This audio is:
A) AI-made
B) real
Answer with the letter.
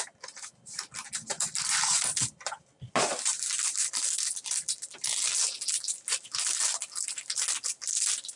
B